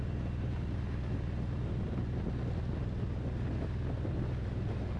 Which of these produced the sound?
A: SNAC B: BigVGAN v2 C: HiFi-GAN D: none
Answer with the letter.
D